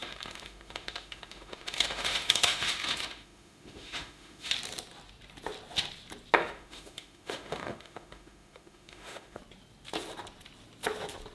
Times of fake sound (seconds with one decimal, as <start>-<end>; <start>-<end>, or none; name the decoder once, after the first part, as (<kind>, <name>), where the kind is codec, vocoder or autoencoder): 0.0-4.5 (autoencoder, DAC-VAE); 6.4-9.4